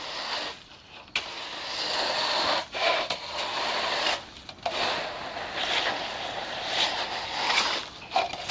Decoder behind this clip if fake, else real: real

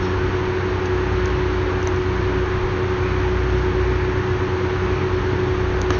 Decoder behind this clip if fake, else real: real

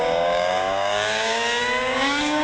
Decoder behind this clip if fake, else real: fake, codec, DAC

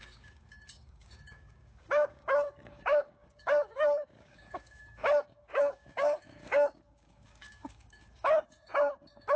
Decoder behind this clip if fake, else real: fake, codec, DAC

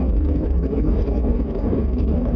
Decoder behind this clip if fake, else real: fake, codec, DAC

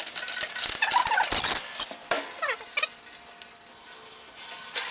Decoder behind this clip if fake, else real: real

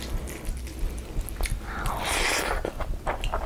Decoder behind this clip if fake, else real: real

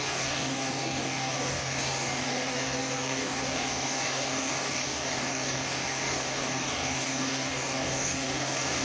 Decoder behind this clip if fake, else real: fake, codec, DAC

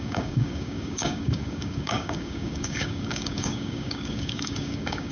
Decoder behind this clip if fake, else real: fake, codec, DAC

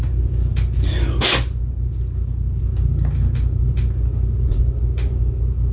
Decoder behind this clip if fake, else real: real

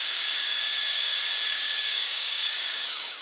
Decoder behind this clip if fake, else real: fake, codec, DAC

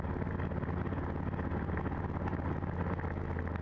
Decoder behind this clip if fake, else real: real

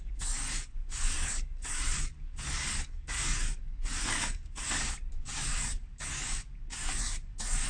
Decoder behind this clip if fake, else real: fake, codec, DAC